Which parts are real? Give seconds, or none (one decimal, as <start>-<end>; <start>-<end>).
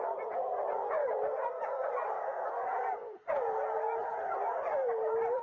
0.0-5.4